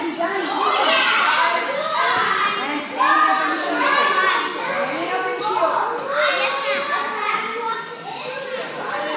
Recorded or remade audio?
recorded